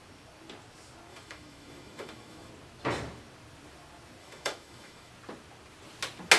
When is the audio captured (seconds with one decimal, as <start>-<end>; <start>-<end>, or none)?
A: 0.0-1.1; 2.5-4.2; 5.1-6.4